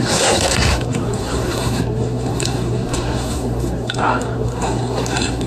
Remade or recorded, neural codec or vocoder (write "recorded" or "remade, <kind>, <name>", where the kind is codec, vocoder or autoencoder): remade, codec, SNAC